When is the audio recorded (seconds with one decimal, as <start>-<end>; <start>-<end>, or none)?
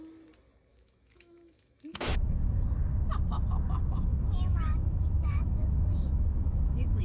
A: 0.0-0.7; 2.6-4.1